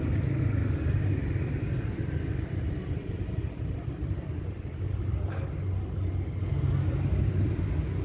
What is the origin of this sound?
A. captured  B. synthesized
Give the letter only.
A